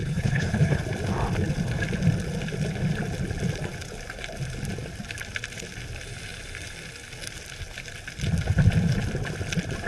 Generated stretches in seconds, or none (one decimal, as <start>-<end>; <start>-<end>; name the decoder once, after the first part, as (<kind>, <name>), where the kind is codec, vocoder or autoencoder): 0.0-0.8 (codec, HILCodec)